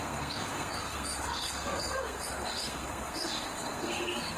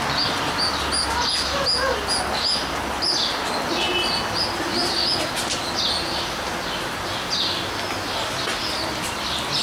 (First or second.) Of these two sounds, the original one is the second